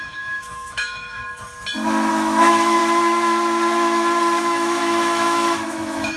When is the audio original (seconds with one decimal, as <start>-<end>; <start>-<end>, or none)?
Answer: 1.2-2.1; 2.8-4.4